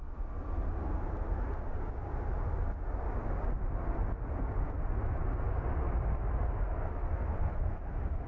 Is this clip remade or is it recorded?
recorded